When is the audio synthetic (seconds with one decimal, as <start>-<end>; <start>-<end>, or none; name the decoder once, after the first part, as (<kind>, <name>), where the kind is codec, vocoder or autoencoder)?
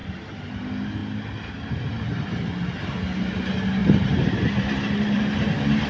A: 0.0-0.6 (vocoder, BigVGAN v2); 3.8-5.2